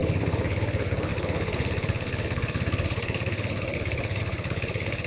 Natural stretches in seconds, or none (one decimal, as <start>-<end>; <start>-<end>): none